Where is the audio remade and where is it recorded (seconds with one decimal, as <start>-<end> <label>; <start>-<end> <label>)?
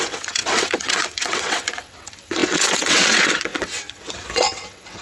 0.0-5.0 remade